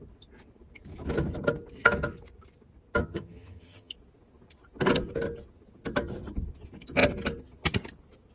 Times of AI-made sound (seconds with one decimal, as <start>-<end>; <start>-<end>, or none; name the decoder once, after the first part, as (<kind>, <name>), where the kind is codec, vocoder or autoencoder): 3.0-3.9 (vocoder, HiFi-GAN)